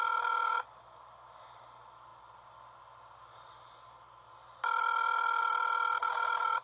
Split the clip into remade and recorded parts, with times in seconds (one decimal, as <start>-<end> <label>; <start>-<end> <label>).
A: 0.0-6.6 recorded